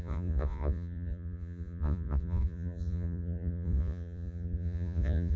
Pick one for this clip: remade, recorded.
remade